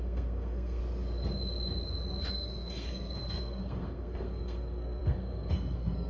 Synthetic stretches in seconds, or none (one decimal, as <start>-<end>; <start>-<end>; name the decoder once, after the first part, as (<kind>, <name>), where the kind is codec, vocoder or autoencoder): 0.0-0.8 (codec, SNAC); 2.3-6.1